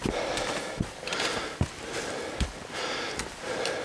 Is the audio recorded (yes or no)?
yes